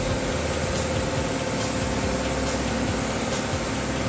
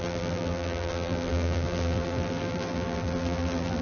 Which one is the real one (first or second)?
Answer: first